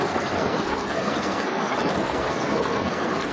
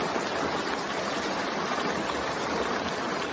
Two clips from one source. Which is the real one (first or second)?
second